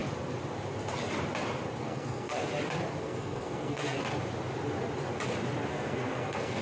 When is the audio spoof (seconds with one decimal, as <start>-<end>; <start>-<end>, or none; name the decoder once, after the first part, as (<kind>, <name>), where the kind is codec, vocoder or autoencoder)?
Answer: 1.8-2.4 (codec, SNAC); 3.0-4.0; 5.7-6.6